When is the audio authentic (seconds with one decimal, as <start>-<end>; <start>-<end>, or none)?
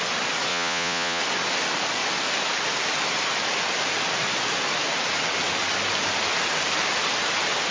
0.0-0.5; 1.2-7.7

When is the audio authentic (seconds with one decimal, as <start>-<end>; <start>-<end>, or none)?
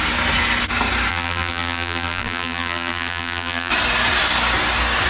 0.0-1.1; 3.7-5.1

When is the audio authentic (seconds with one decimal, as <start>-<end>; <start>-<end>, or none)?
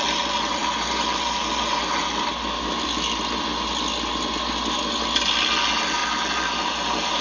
0.0-7.2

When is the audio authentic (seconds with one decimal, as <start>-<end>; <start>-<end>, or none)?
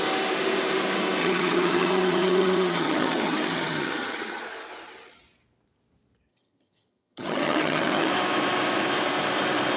0.0-1.2; 4.4-6.3; 8.1-9.8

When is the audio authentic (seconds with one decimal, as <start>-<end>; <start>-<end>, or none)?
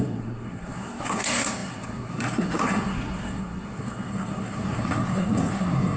none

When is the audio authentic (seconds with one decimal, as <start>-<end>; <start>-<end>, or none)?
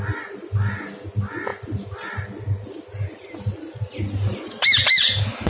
0.0-5.5